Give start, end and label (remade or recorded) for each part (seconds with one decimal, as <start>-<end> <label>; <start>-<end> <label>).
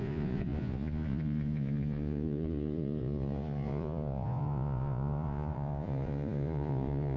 0.0-7.2 remade